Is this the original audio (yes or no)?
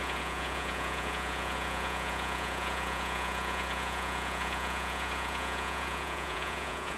no